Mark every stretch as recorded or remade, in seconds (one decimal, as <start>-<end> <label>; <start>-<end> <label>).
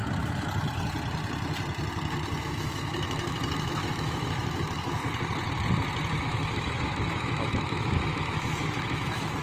0.0-2.4 recorded; 2.4-5.0 remade; 5.0-6.2 recorded; 6.2-9.4 remade